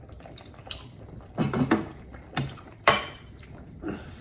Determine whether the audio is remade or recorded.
remade